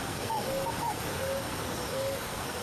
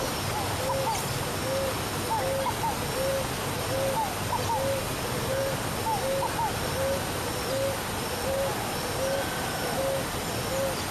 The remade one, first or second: first